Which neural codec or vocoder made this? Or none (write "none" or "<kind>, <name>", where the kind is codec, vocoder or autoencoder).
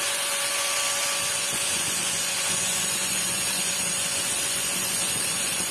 vocoder, Vocos